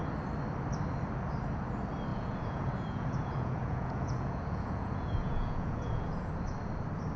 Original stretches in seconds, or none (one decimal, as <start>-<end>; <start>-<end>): 0.0-2.1; 6.3-7.2